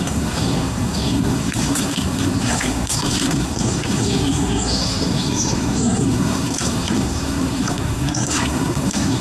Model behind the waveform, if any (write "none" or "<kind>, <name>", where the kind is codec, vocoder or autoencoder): codec, SNAC